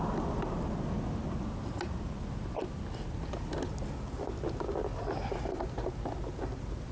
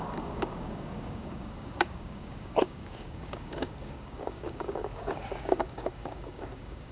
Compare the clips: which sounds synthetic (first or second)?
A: second